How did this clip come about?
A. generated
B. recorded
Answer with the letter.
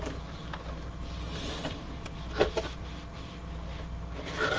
B